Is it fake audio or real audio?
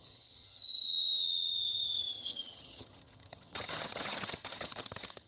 fake